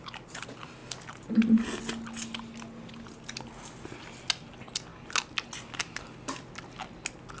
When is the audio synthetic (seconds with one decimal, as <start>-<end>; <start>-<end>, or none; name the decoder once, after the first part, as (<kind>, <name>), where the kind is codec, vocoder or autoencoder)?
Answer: none